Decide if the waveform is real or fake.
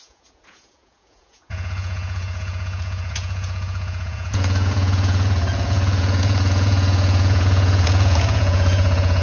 fake